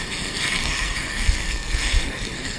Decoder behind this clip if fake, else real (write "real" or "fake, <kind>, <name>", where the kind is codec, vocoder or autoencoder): fake, codec, SNAC